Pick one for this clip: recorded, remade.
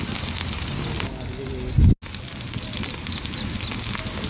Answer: recorded